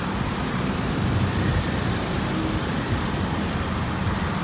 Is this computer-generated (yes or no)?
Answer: yes